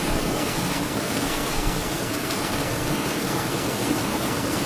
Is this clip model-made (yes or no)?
yes